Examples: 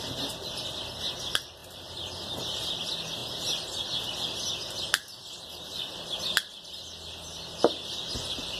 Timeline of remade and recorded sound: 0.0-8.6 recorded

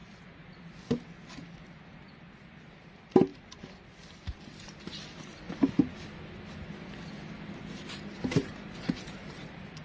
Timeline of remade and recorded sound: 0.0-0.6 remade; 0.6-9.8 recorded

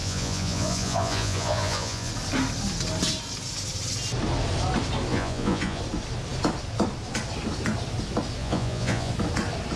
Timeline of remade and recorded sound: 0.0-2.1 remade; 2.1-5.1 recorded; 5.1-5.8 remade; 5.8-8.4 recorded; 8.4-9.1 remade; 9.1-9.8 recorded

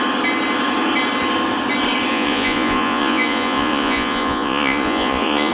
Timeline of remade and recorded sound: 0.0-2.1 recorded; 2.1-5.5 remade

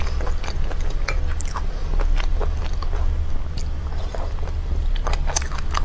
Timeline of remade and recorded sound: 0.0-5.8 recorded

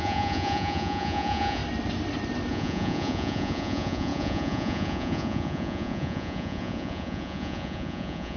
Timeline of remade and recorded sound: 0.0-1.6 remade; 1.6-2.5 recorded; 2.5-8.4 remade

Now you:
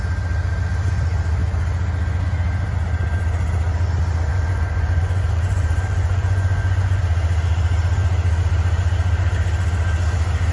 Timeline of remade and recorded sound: 0.0-4.3 recorded; 4.3-7.0 remade; 7.0-10.5 recorded